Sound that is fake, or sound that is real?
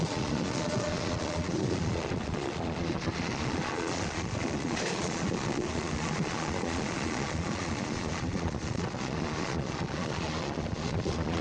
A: fake